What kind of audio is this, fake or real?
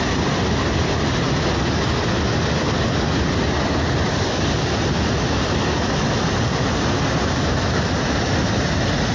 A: real